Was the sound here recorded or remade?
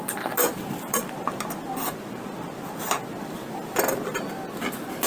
recorded